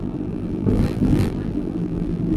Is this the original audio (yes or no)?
no